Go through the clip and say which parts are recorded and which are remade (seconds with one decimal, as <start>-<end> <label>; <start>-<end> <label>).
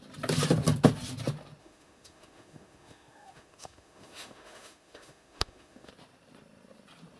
0.0-1.6 recorded; 1.6-5.9 remade; 5.9-7.2 recorded